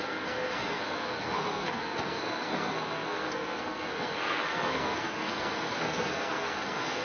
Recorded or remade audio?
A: remade